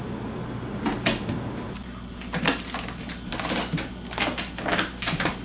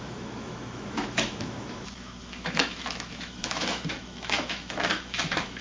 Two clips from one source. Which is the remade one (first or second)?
second